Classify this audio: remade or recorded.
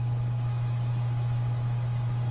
remade